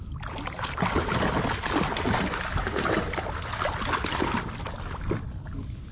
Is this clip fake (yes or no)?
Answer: no